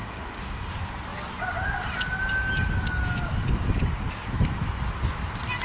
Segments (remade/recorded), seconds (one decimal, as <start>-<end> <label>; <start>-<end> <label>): 0.0-0.7 remade; 0.7-5.6 recorded